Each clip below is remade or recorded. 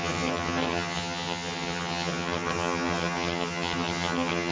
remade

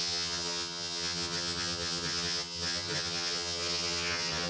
remade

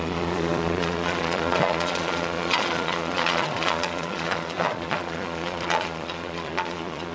remade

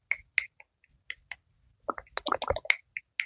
recorded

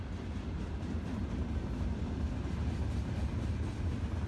recorded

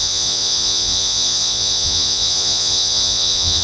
remade